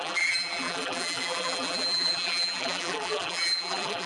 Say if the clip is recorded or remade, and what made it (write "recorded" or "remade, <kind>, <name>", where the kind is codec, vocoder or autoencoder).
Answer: remade, vocoder, BigVGAN v2